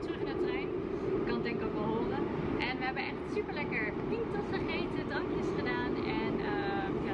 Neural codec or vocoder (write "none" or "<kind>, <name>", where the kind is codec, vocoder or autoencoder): none